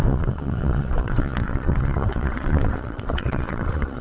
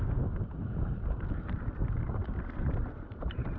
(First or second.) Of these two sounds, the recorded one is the second